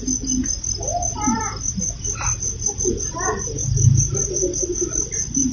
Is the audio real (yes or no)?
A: yes